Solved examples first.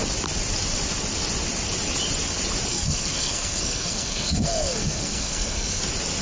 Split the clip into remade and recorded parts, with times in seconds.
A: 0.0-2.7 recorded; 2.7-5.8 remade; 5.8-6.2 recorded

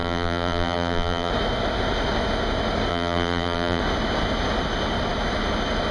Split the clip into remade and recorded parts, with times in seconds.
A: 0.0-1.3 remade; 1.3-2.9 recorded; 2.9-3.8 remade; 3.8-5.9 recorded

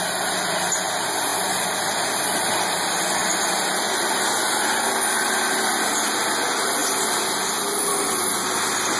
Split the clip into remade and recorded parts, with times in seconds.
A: 0.0-1.3 recorded; 1.3-1.8 remade; 1.8-9.0 recorded